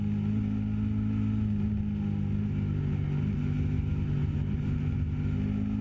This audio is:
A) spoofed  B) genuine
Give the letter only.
B